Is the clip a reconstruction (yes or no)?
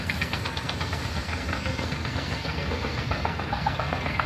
yes